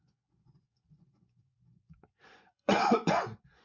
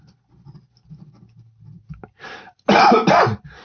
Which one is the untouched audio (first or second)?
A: second